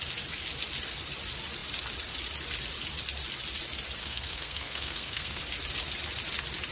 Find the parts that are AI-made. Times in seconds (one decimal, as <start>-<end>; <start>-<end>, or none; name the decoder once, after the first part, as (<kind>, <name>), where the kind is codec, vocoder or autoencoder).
4.0-5.4 (codec, SNAC)